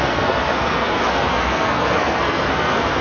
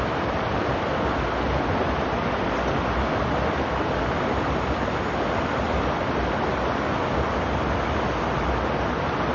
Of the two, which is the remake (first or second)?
first